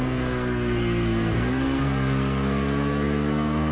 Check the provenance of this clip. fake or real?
fake